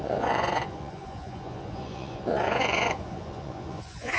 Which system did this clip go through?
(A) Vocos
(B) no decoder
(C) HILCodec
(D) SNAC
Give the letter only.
A